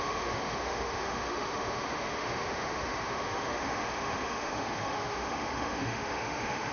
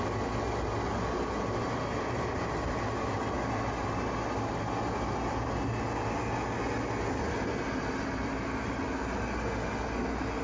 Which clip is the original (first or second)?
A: second